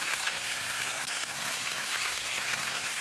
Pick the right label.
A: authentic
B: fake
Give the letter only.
B